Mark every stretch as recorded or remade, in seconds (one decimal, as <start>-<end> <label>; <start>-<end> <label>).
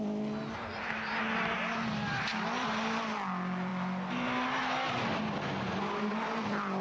0.0-6.8 recorded